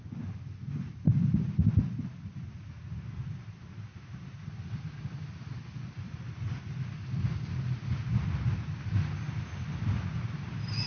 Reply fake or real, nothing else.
real